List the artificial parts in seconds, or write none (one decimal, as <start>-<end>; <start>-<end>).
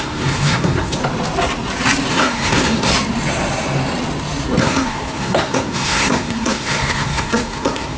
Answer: 0.0-1.0; 2.1-2.9; 4.6-8.0